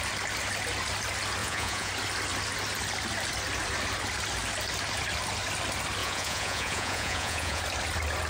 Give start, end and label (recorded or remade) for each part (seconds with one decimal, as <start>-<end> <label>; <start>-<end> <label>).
0.0-1.4 recorded; 1.4-1.9 remade; 1.9-6.0 recorded; 6.0-7.6 remade; 7.6-8.3 recorded